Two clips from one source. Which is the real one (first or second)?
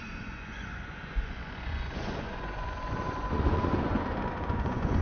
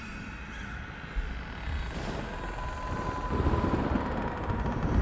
second